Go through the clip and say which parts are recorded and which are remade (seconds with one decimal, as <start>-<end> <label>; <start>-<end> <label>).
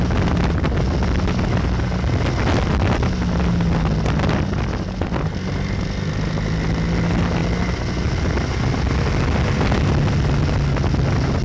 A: 0.0-11.4 recorded